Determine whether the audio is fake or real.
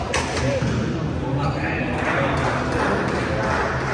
real